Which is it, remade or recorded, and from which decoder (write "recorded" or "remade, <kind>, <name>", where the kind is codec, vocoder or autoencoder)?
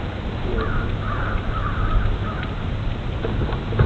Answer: recorded